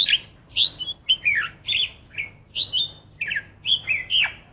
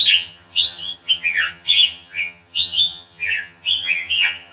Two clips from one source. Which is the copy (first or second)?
second